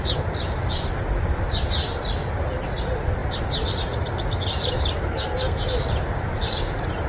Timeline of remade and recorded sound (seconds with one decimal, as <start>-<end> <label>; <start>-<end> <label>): 0.0-5.1 recorded; 5.1-5.6 remade; 5.6-7.1 recorded